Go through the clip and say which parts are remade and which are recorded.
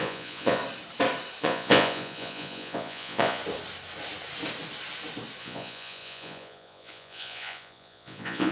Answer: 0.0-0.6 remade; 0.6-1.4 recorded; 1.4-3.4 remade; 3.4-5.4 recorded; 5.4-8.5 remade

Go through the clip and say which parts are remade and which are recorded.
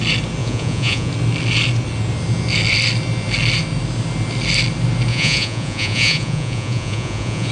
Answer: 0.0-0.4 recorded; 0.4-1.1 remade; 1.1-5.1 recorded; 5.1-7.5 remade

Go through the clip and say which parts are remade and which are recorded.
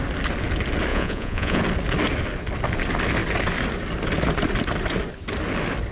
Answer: 0.0-0.9 recorded; 0.9-1.6 remade; 1.6-5.9 recorded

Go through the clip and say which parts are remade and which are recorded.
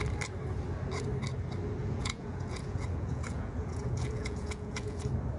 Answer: 0.0-1.8 recorded; 1.8-5.0 remade; 5.0-5.4 recorded